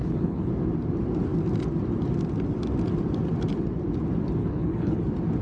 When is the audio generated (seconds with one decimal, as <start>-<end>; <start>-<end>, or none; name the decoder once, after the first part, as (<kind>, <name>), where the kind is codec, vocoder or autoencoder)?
0.0-0.5 (codec, HILCodec); 4.4-5.0